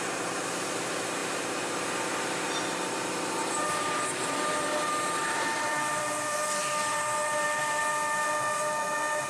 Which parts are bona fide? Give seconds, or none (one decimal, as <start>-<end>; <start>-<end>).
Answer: none